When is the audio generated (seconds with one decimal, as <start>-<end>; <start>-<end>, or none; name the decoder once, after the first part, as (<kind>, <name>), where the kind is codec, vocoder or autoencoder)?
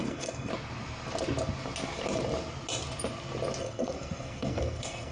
0.0-0.5 (codec, SNAC); 3.6-5.1